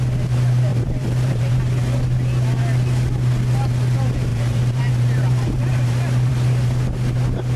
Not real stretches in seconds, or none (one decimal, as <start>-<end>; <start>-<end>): 0.7-1.6; 4.3-6.3